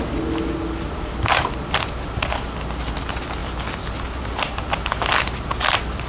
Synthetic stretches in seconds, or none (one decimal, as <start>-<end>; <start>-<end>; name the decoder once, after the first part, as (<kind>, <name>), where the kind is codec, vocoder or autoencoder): none